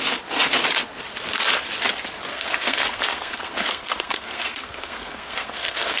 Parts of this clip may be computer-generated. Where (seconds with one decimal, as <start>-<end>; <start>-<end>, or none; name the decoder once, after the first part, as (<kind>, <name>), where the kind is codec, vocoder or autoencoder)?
2.3-6.0 (codec, SNAC)